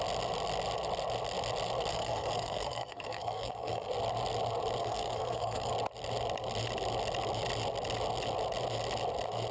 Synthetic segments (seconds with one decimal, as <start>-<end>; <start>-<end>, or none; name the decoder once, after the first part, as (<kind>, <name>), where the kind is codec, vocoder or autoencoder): 1.9-3.9 (codec, SNAC); 4.8-5.7